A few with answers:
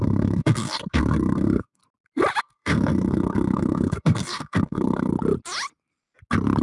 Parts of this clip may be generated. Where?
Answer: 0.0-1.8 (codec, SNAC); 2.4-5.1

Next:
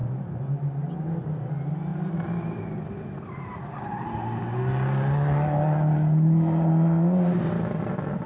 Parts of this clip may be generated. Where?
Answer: none

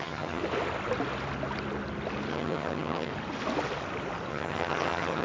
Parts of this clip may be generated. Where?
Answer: 0.0-0.4 (vocoder, HiFi-GAN); 2.3-3.1; 4.3-5.2

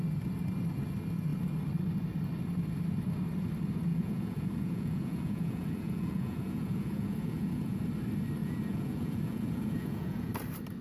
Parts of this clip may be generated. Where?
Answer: 3.9-7.8 (vocoder, Vocos); 8.4-10.3

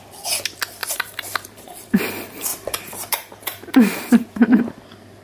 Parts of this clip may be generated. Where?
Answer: 0.8-2.0 (vocoder, BigVGAN v2); 2.5-4.6

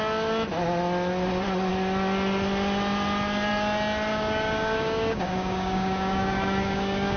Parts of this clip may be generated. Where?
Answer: 4.1-7.2 (codec, DAC)

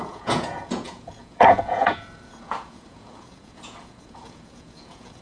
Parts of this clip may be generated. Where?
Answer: 0.0-5.2 (vocoder, Vocos)

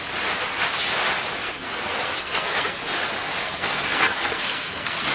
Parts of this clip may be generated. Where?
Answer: 1.4-2.8 (codec, SNAC); 3.3-5.1